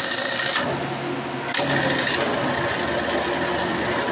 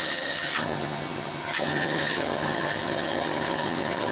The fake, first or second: second